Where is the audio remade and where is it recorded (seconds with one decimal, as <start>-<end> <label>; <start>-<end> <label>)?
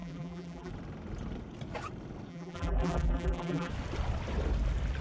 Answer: 0.0-0.7 remade; 0.7-2.3 recorded; 2.3-3.7 remade; 3.7-5.0 recorded